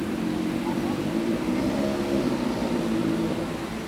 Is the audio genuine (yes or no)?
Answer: no